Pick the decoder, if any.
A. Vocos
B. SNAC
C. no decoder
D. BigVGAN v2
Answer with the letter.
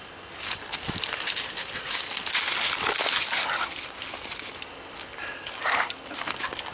C